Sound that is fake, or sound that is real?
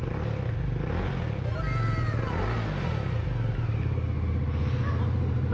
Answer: real